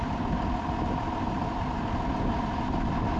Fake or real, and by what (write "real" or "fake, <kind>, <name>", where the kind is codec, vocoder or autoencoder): real